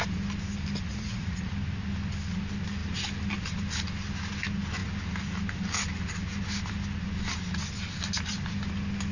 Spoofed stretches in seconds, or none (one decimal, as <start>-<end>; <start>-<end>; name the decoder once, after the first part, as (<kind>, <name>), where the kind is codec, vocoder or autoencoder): 0.9-1.5 (vocoder, Vocos)